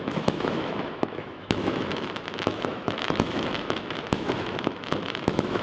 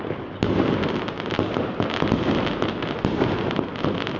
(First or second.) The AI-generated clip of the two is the first